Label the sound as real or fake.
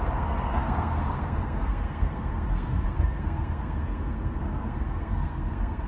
fake